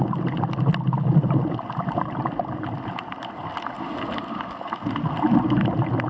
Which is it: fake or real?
real